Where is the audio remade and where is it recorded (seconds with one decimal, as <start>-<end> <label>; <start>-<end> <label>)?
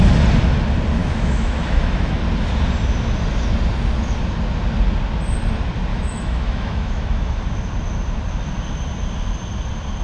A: 0.0-1.0 recorded; 1.0-2.2 remade; 2.2-5.9 recorded; 5.9-7.4 remade; 7.4-10.0 recorded